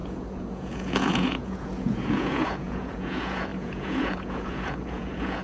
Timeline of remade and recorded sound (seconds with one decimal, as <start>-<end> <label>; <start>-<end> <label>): 0.0-5.4 remade